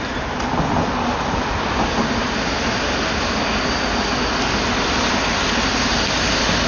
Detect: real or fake real